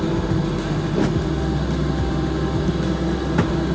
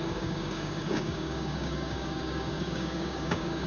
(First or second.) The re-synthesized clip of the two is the second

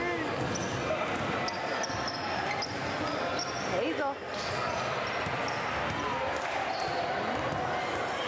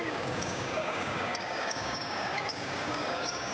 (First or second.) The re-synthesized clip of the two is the second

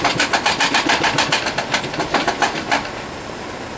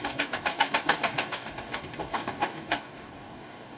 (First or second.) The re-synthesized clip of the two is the second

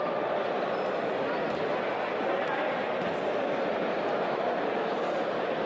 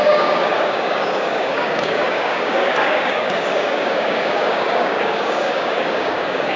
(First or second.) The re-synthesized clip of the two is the second